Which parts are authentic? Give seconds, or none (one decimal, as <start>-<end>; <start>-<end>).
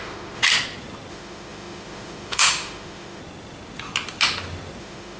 0.4-1.1; 3.2-4.8